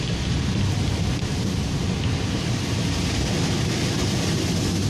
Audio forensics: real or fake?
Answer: real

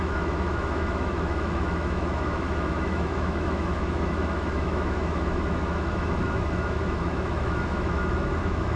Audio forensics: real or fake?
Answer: fake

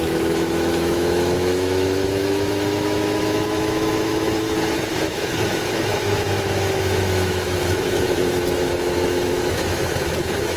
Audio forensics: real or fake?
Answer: fake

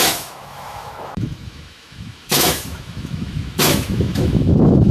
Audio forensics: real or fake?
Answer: fake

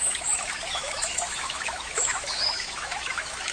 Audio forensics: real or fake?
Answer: fake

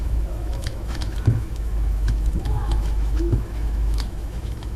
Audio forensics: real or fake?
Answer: fake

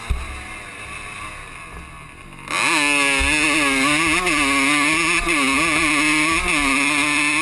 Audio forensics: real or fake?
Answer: real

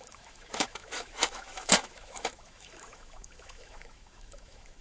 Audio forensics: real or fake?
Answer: fake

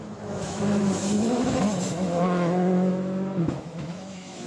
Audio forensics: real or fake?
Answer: fake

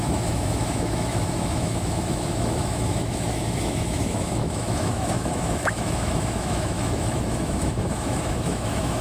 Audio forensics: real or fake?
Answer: fake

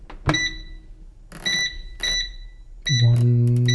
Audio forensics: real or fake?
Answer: real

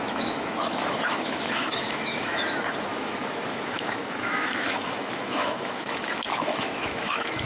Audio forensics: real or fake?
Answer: fake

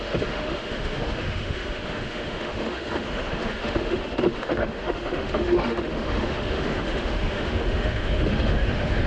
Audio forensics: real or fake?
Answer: fake